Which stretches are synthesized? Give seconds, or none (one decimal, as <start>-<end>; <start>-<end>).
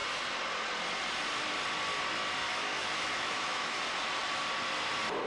2.4-3.8